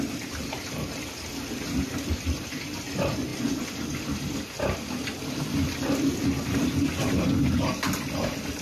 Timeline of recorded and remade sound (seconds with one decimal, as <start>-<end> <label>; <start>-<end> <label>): 0.0-8.6 recorded